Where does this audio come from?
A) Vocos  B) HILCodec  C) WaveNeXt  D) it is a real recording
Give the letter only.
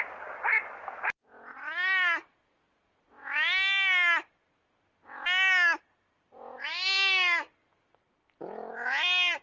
D